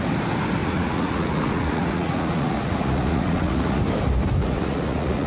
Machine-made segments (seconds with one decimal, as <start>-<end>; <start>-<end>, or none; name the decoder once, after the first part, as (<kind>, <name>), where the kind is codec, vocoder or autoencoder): 0.6-3.8 (vocoder, Vocos); 4.4-5.3